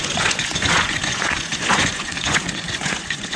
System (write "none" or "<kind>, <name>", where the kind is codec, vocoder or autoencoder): vocoder, Vocos